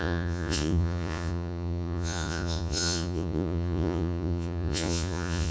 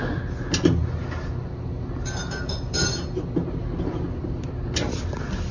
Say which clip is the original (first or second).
second